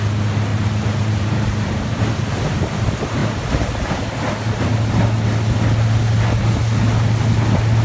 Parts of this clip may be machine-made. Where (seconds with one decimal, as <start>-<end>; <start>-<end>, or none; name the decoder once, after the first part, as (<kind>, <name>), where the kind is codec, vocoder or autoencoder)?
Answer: 0.5-2.1 (vocoder, BigVGAN v2)